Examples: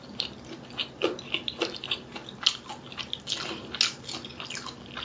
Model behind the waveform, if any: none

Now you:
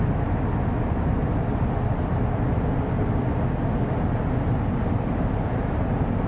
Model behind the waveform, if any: none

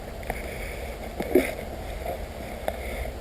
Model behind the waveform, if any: none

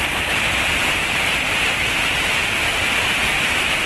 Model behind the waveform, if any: none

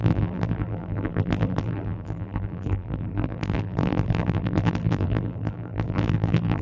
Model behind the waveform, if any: vocoder, BigVGAN v2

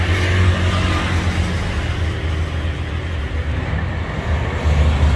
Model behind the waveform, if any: none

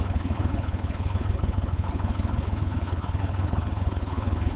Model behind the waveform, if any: codec, HILCodec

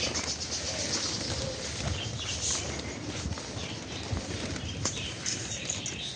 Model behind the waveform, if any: none